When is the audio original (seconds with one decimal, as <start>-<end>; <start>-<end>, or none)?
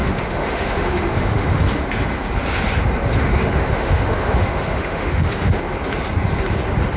1.6-3.1; 5.6-7.0